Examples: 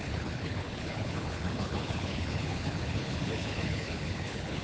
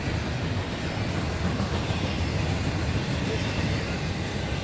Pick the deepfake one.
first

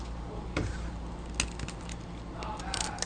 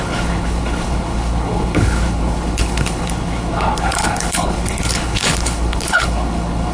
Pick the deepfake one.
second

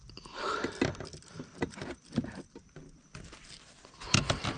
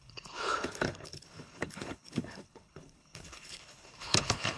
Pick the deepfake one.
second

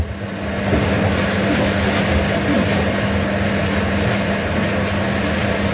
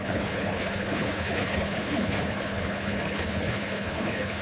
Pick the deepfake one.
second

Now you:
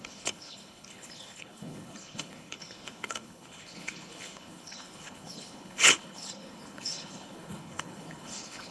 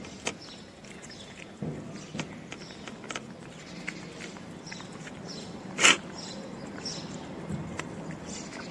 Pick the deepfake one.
first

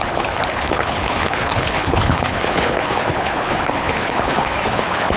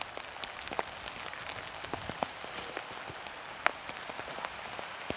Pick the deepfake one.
first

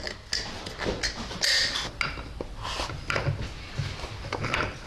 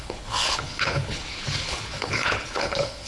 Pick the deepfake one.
second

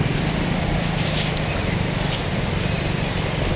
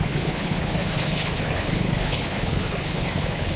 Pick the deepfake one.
second